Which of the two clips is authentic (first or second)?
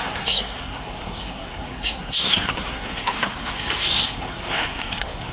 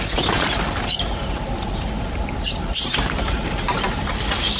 second